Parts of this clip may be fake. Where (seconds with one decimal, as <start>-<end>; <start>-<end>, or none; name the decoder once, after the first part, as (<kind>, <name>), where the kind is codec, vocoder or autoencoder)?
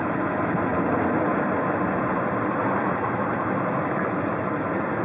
none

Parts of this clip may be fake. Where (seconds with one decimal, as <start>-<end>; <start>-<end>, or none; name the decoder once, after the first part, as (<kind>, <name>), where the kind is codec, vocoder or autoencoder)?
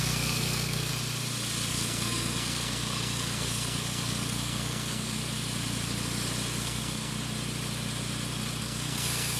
0.0-0.9 (codec, SNAC); 1.7-5.2; 6.6-7.1; 8.6-9.4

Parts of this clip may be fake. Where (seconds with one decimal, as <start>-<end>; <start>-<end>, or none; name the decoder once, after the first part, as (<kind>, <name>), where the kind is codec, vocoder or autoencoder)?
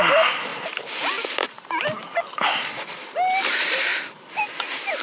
none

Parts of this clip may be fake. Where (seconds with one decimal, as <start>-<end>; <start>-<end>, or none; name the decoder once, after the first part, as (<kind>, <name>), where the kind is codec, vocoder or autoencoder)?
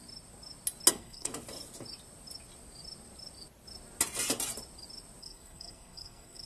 0.9-1.3 (codec, SNAC); 5.2-6.5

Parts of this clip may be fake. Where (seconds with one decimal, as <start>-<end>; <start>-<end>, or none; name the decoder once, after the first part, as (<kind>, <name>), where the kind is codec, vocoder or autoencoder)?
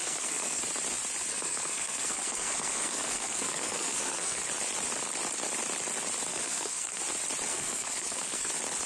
0.0-0.6 (codec, SNAC); 1.3-4.4; 6.3-7.0; 7.5-8.5